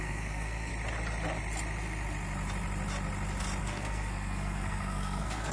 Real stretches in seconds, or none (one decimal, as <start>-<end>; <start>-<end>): 0.7-3.6